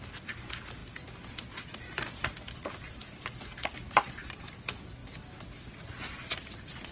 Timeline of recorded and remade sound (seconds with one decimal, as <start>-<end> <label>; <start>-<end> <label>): 0.0-6.9 recorded